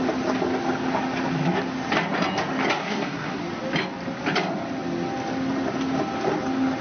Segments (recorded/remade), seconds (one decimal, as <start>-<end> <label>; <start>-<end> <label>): 0.0-2.8 recorded; 2.8-3.4 remade; 3.4-6.8 recorded